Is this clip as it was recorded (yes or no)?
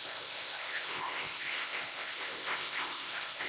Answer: no